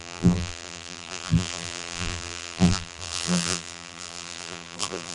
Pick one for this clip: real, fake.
fake